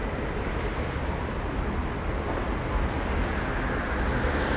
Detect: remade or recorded recorded